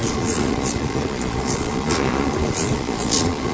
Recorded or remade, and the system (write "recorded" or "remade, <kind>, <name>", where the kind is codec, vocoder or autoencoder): remade, vocoder, Vocos